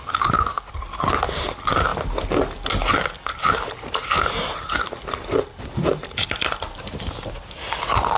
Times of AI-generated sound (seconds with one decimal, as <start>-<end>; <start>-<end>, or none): none